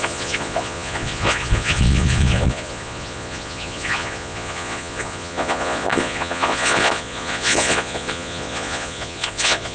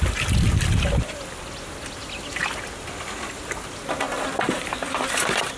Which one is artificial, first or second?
first